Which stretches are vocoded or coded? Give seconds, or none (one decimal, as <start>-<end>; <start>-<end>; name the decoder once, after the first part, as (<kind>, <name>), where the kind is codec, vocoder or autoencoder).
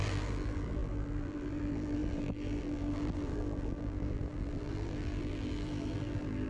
0.0-6.5 (vocoder, BigVGAN v2)